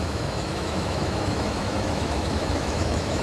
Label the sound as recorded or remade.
remade